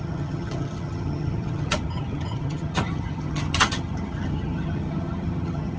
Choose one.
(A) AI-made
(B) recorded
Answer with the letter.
A